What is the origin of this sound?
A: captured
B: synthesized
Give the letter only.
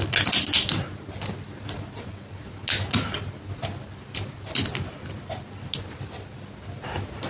A